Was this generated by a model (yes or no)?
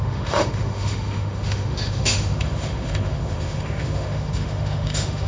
yes